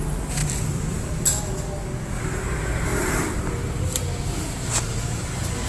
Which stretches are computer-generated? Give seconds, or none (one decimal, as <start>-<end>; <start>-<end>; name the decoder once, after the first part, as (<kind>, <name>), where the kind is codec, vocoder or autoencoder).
0.4-1.1 (vocoder, BigVGAN v2); 2.9-3.5